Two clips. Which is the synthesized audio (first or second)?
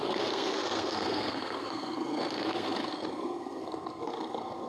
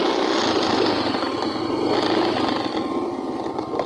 first